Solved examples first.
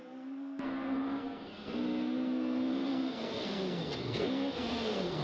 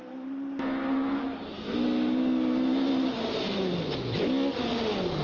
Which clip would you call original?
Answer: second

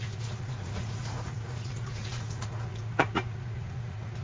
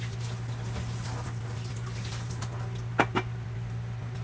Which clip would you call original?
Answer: second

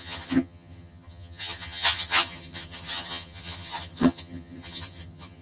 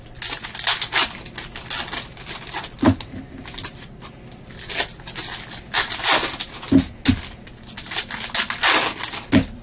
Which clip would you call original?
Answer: second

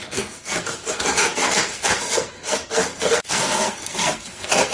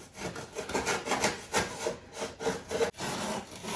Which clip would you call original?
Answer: second